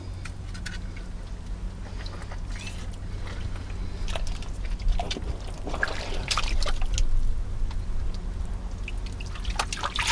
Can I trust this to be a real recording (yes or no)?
yes